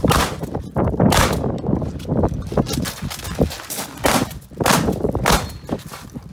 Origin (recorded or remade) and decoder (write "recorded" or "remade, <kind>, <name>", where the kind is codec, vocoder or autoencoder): recorded